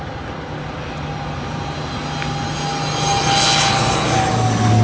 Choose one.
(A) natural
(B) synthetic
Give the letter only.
A